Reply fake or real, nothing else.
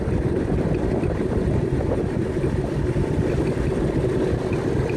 real